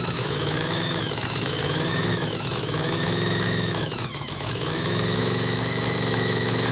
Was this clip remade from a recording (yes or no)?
yes